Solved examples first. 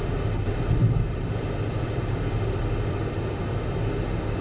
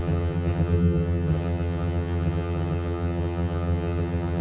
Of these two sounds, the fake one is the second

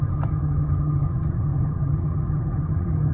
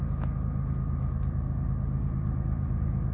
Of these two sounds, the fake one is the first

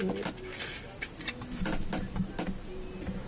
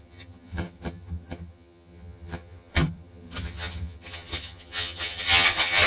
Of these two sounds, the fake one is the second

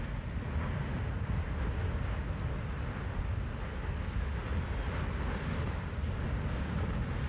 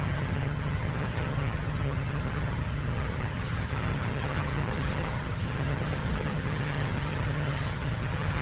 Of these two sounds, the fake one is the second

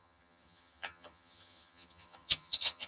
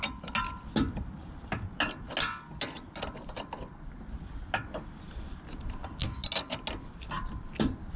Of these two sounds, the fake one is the first